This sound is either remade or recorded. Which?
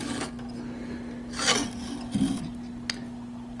recorded